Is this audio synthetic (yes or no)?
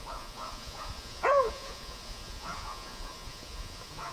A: yes